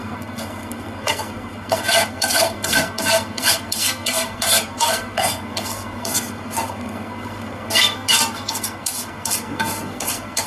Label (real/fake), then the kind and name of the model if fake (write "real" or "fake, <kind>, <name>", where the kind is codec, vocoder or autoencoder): fake, codec, SNAC